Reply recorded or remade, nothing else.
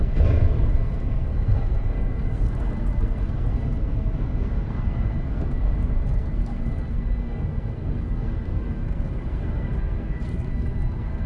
remade